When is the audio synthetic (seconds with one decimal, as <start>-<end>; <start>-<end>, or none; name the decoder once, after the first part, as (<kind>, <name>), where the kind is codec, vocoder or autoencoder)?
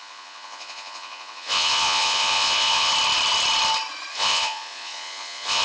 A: 0.0-2.9 (vocoder, Vocos); 4.1-5.6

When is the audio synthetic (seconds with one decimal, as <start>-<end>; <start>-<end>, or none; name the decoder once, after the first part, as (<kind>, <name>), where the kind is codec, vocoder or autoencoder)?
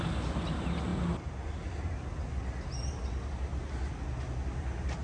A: none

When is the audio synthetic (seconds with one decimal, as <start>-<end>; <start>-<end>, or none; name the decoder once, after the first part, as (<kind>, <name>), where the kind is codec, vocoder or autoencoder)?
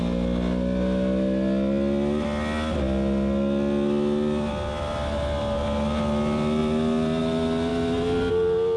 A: none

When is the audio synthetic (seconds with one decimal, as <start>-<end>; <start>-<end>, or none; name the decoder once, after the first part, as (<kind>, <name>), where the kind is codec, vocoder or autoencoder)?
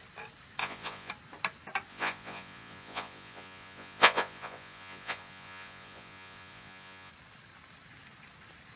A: 0.6-1.1 (vocoder, Vocos); 1.9-7.1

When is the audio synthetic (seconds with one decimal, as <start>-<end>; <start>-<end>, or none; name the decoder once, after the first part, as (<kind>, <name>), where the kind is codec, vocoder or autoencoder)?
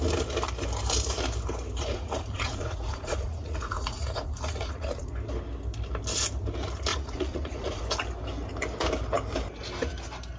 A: 1.8-5.1 (vocoder, Vocos); 6.9-7.8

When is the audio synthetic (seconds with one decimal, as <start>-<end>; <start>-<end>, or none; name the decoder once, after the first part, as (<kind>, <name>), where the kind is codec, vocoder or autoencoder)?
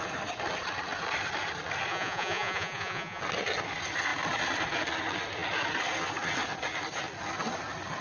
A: 1.9-3.2 (vocoder, Vocos)